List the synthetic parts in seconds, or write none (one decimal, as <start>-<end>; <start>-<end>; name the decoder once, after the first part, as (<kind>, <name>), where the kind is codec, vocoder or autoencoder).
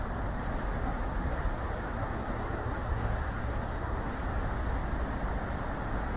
0.7-4.2 (codec, SNAC)